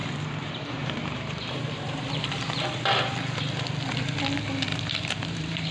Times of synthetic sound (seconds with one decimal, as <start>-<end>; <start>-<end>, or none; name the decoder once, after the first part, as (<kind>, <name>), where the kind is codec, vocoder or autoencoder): 0.0-3.4 (vocoder, BigVGAN v2); 4.7-5.7